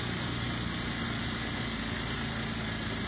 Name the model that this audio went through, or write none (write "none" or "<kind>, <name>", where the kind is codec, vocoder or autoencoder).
none